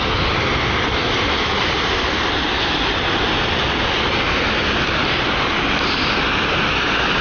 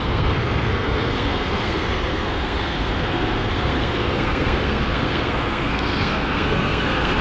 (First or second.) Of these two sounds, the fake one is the second